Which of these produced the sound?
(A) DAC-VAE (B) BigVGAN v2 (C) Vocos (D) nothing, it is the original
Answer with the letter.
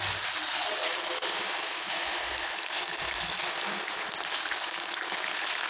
D